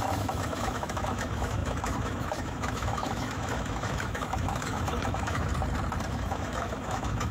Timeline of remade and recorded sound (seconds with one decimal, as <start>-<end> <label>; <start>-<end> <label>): 0.0-5.5 remade; 5.5-6.1 recorded; 6.1-7.3 remade